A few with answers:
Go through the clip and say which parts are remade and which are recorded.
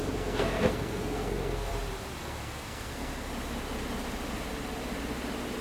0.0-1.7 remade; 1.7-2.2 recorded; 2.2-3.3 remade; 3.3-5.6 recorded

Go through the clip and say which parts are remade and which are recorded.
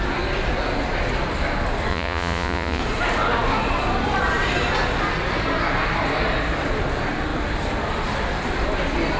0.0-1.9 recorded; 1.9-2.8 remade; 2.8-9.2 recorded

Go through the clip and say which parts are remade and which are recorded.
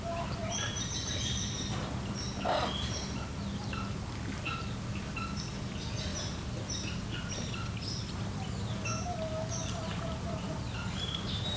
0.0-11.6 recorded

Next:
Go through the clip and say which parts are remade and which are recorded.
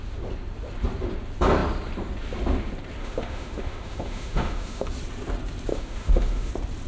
0.0-3.0 recorded; 3.0-4.9 remade; 4.9-5.7 recorded; 5.7-6.5 remade; 6.5-6.9 recorded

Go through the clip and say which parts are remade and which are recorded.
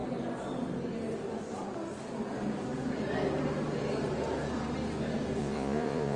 0.0-5.4 recorded; 5.4-6.2 remade